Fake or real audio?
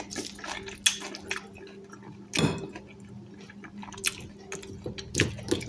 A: real